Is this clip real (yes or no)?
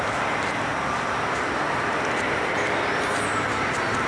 yes